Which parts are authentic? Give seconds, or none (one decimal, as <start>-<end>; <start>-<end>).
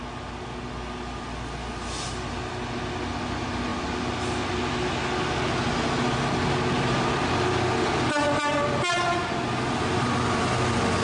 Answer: 0.0-11.0